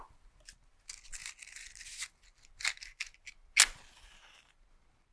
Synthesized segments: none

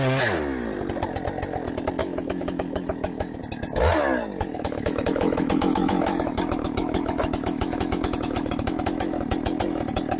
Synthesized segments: 2.0-3.4 (autoencoder, DAC-VAE); 4.5-9.2

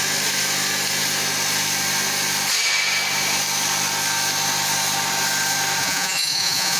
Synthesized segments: 5.8-6.8 (vocoder, Vocos)